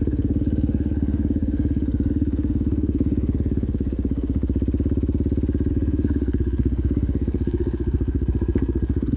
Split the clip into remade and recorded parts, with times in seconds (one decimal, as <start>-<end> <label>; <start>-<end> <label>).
0.0-4.4 remade; 4.4-5.7 recorded; 5.7-9.2 remade